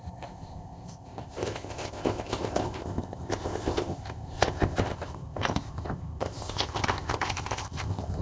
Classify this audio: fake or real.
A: fake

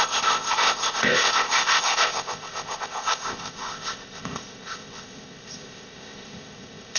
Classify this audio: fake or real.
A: fake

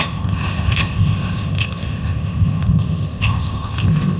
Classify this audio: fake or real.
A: fake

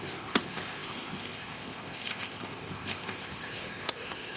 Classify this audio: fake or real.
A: fake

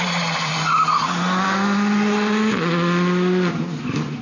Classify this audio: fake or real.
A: real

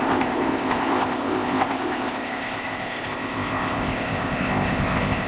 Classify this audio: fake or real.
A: fake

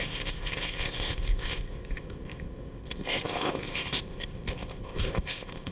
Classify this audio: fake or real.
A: fake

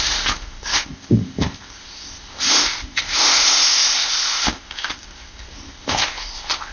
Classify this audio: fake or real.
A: fake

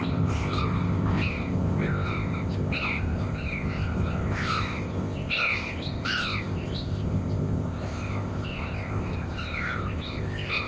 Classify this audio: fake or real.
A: fake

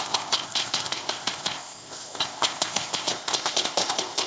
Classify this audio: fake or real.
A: fake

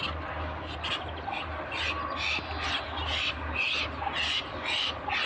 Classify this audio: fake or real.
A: real